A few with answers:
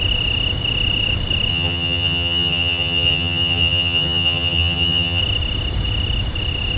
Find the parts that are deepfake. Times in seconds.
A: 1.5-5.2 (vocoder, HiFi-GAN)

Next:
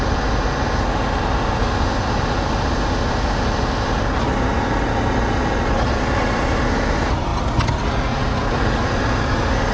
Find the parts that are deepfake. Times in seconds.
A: none

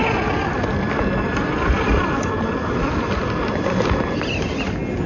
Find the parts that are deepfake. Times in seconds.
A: none

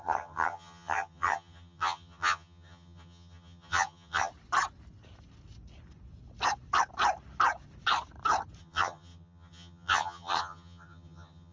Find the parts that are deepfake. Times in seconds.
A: 0.0-4.3 (vocoder, HiFi-GAN); 8.6-11.5

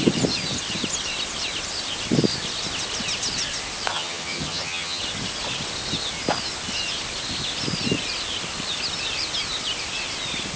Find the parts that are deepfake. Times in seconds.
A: 3.9-5.0 (vocoder, HiFi-GAN)